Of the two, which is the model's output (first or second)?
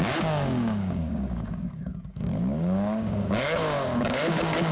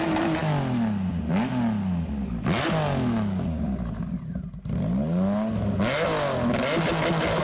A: first